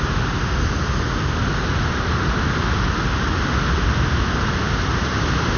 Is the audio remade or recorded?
recorded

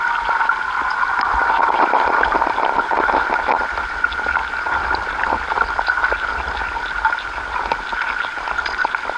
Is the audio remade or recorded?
recorded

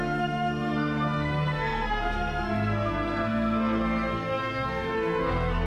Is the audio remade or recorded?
remade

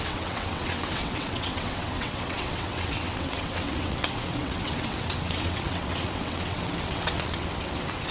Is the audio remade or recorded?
remade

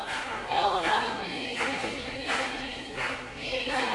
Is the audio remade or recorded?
remade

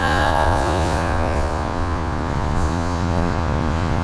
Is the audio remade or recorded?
remade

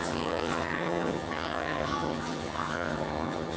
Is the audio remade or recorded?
remade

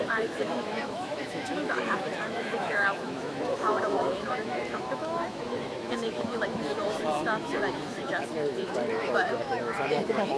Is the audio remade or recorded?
remade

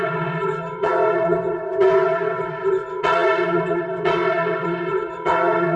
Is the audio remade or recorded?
remade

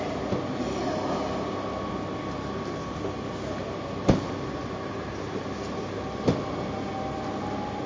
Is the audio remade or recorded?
recorded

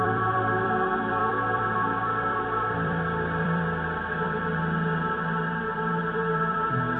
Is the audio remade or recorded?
remade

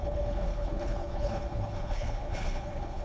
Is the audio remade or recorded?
remade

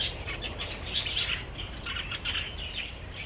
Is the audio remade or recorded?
recorded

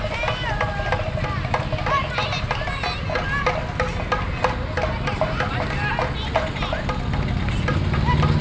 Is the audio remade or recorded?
recorded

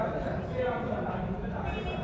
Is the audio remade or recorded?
remade